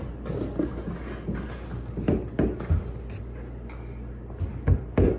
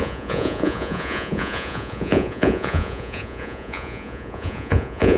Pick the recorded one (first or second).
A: first